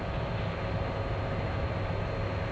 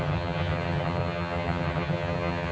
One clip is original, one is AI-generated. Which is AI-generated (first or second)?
second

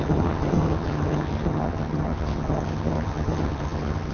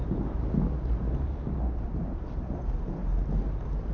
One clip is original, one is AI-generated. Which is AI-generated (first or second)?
first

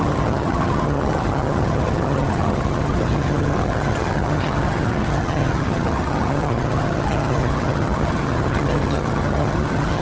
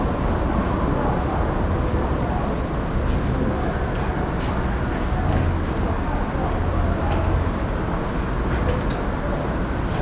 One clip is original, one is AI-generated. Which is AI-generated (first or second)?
first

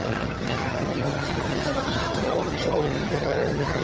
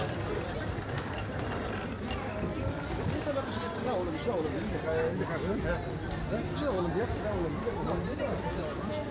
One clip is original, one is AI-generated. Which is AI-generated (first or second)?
first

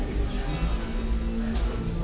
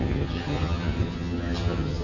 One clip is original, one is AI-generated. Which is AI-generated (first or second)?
second